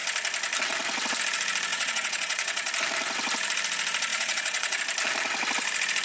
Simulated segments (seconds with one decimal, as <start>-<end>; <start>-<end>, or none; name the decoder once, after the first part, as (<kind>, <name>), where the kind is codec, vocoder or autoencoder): 1.7-2.7 (vocoder, WaveNeXt); 4.1-4.8